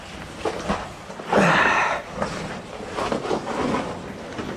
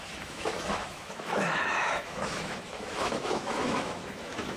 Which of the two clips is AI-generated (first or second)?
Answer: second